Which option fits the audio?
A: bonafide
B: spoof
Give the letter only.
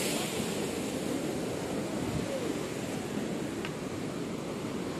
A